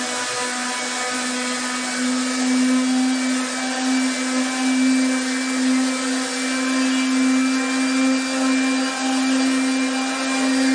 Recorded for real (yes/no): yes